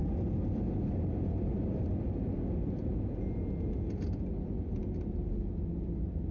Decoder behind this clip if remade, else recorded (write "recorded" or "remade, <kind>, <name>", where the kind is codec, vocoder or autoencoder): recorded